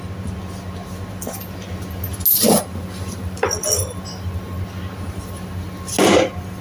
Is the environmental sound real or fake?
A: real